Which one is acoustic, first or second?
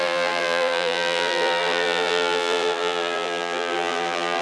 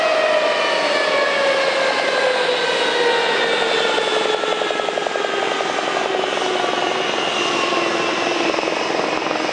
second